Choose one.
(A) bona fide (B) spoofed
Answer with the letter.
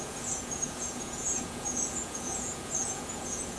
B